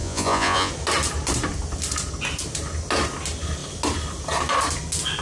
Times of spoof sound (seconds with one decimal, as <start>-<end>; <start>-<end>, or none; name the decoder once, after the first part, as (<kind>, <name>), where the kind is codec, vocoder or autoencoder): 0.0-0.7 (vocoder, Vocos)